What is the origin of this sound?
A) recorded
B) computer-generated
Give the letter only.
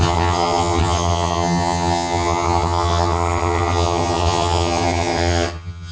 B